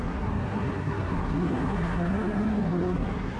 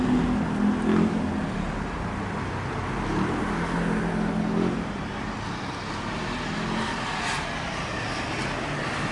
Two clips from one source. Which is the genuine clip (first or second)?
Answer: second